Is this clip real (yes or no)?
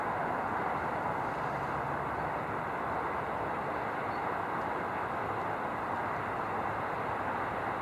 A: yes